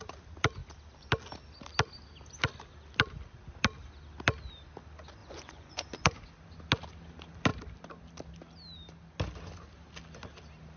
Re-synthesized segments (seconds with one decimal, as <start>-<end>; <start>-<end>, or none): 5.2-6.2